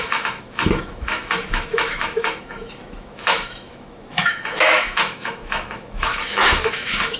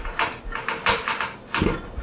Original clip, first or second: second